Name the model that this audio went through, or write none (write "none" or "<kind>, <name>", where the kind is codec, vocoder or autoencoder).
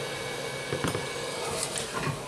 none